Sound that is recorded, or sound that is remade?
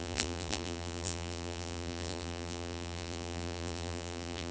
remade